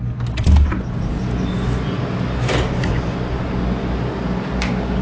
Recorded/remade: recorded